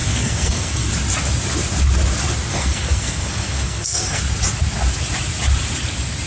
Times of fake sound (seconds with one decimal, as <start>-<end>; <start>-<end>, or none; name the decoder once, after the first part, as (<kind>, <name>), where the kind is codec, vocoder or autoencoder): 0.0-0.9 (codec, SNAC); 2.5-4.2